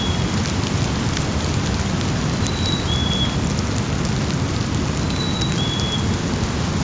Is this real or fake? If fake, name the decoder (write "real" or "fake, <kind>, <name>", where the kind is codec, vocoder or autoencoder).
real